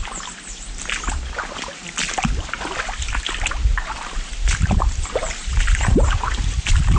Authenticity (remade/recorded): recorded